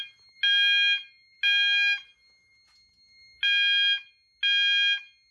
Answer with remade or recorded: recorded